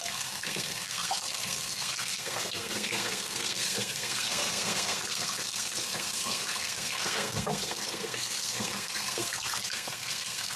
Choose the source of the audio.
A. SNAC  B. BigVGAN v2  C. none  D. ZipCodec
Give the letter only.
A